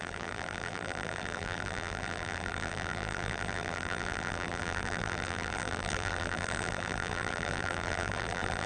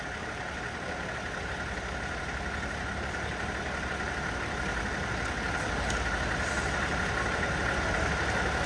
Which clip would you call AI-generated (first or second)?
first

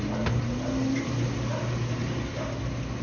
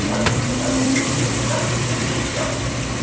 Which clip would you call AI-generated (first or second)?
second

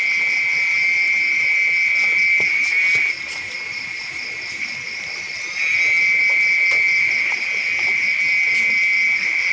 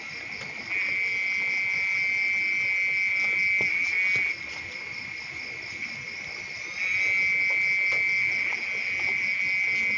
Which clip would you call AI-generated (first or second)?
first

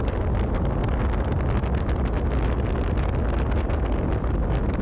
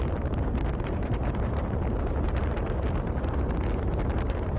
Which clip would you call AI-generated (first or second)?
second